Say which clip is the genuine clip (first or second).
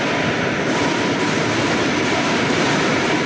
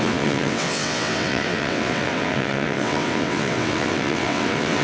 first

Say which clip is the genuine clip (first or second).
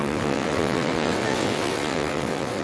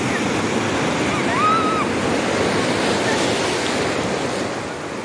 second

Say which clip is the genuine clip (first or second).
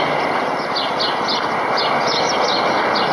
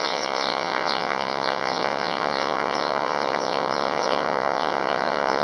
first